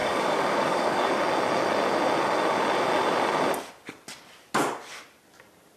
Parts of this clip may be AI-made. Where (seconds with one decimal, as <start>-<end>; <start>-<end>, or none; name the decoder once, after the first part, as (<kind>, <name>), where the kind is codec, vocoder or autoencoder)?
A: 0.0-1.1 (codec, DAC)